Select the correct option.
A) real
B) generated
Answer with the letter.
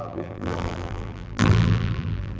B